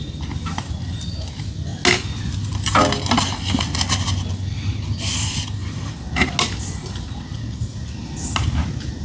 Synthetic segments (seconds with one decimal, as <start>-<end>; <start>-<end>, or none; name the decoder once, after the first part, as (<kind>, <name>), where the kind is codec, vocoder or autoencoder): none